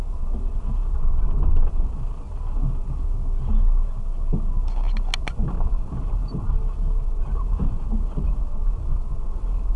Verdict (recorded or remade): recorded